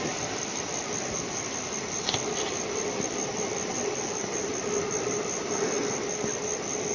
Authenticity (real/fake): real